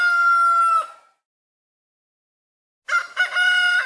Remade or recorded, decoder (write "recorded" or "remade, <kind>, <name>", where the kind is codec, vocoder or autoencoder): recorded